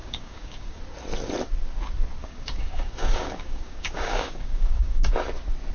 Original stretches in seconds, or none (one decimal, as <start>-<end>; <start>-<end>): 0.8-2.2; 5.1-5.7